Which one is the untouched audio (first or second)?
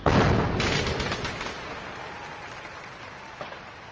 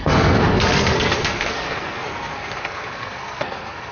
first